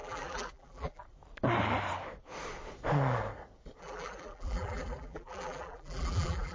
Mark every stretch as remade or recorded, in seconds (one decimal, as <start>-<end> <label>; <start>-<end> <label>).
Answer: 0.0-1.0 remade; 1.0-3.8 recorded; 3.8-6.5 remade